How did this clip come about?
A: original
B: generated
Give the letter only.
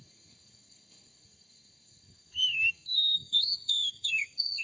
B